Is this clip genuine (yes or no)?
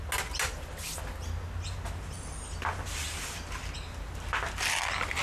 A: yes